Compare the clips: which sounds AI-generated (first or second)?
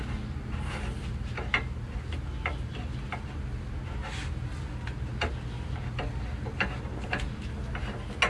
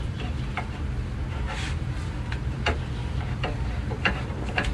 second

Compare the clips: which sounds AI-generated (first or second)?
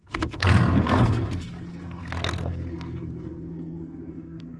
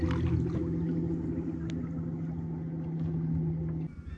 first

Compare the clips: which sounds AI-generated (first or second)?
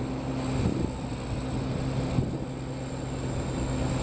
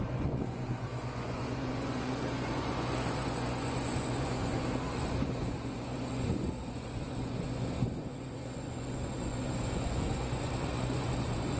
second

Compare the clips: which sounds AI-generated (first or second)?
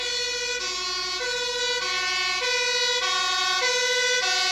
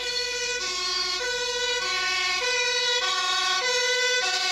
second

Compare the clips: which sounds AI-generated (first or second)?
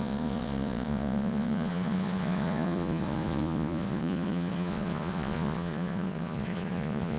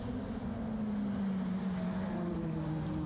first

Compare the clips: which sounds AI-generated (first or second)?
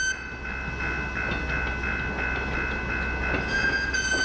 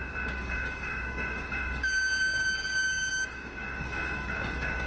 second